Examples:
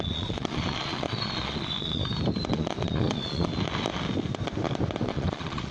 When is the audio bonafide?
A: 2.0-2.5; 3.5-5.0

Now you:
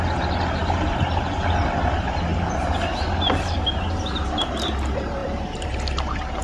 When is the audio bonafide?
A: 0.0-5.2

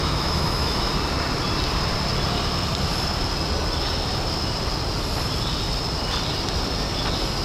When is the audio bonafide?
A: 0.9-7.4

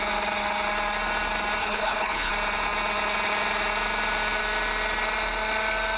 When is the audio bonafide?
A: 0.0-1.6; 2.3-6.0

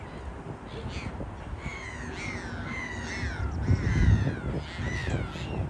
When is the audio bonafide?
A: 0.0-5.7

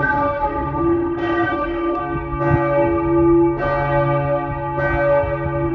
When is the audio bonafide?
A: 2.0-5.7